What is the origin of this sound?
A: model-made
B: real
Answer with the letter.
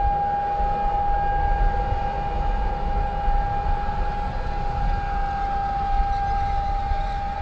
B